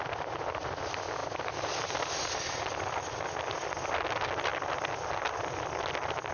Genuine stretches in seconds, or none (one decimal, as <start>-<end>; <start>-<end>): 0.0-6.3